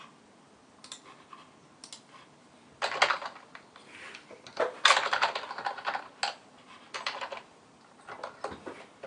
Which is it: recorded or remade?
recorded